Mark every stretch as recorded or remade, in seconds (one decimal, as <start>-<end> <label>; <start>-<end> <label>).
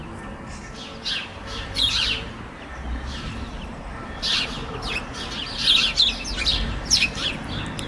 0.0-1.3 recorded; 1.3-4.4 remade; 4.4-6.5 recorded; 6.5-7.3 remade; 7.3-7.9 recorded